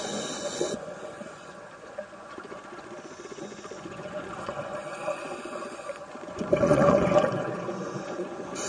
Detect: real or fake fake